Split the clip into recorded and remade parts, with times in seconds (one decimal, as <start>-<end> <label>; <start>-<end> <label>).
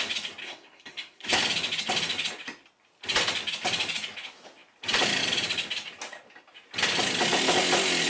0.0-0.4 recorded; 0.4-1.4 remade; 1.4-8.1 recorded